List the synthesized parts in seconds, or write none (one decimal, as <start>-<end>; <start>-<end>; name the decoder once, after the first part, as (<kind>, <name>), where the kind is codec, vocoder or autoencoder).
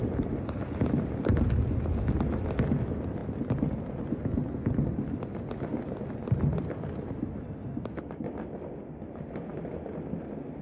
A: none